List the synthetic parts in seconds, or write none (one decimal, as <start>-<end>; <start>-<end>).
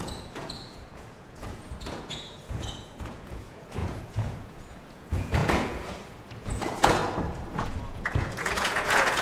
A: 0.0-7.0; 7.5-9.2